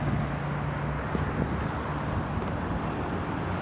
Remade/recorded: recorded